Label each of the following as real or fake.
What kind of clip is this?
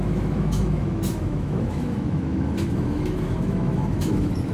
fake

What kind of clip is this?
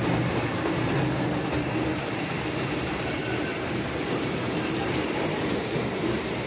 fake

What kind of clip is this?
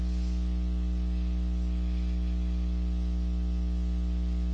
real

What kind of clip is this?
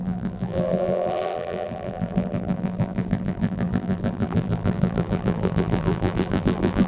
fake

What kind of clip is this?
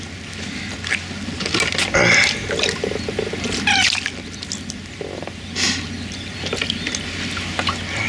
real